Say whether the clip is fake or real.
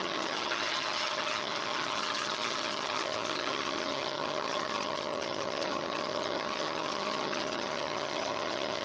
fake